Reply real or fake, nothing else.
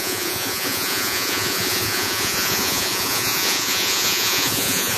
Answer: fake